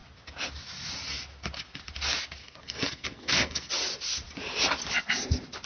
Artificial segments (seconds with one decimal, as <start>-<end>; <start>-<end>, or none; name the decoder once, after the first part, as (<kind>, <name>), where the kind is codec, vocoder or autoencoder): 2.4-3.7 (codec, SNAC)